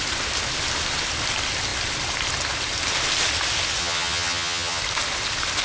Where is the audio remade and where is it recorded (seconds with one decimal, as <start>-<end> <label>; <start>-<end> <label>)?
0.0-3.8 recorded; 3.8-4.8 remade; 4.8-5.6 recorded